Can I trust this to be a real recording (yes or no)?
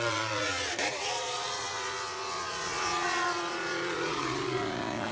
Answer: no